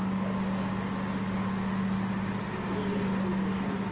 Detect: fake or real real